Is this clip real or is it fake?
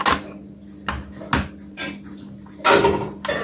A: real